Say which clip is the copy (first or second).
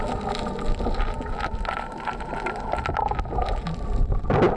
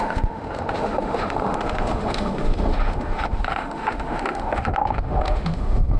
second